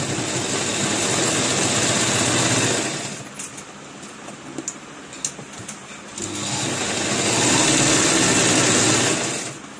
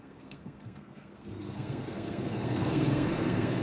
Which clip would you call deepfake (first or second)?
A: second